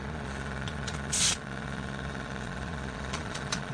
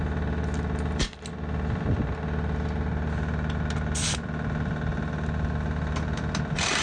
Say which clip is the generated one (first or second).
first